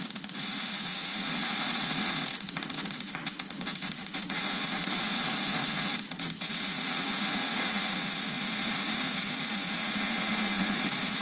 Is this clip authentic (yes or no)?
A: no